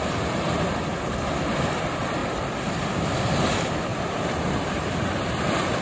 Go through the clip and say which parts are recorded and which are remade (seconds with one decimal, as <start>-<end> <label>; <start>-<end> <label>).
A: 0.0-2.2 recorded; 2.2-3.5 remade; 3.5-3.9 recorded; 3.9-5.1 remade; 5.1-5.8 recorded